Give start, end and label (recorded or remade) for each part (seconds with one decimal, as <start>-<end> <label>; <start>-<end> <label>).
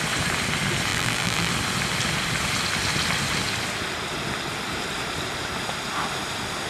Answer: 0.0-0.9 recorded; 0.9-1.5 remade; 1.5-6.7 recorded